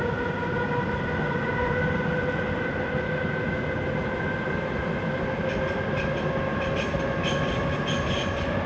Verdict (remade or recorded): recorded